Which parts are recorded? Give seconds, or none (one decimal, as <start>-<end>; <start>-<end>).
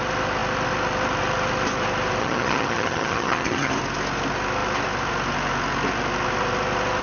0.0-2.2; 3.7-7.0